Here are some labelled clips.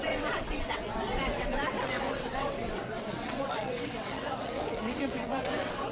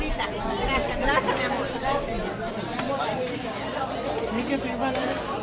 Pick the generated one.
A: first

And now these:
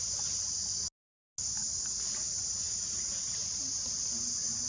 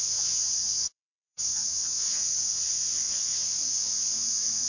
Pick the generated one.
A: second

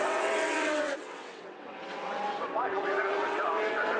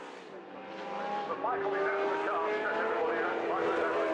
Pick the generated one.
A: first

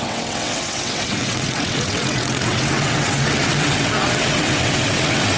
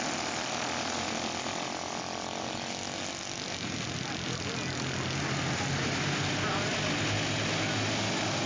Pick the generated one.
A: first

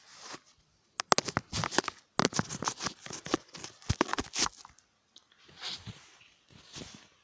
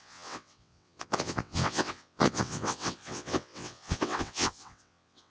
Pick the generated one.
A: second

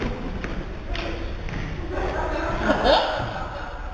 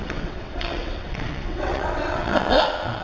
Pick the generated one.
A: second